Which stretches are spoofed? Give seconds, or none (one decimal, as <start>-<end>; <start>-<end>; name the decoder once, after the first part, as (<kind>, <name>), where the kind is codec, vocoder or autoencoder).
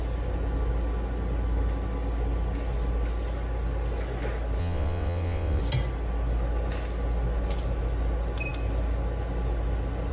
4.6-5.6 (vocoder, WaveNeXt)